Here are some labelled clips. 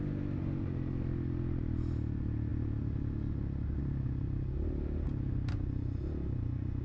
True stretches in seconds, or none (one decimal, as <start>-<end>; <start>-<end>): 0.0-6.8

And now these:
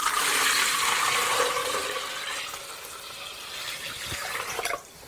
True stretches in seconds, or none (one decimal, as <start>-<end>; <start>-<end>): 1.6-5.1

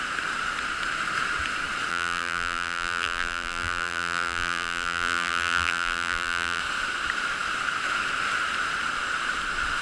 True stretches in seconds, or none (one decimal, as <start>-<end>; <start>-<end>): 0.0-1.9; 6.6-9.8

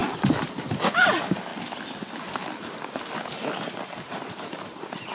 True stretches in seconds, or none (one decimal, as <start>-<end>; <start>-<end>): 0.0-0.6; 1.5-3.3

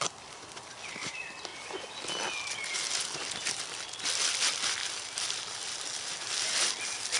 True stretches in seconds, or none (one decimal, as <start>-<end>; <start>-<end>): 1.5-2.9